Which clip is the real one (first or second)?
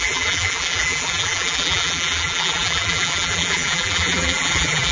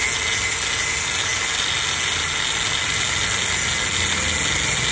second